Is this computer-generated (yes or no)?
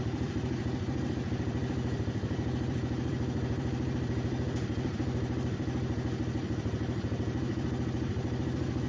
yes